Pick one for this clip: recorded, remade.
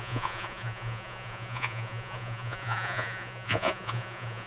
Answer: remade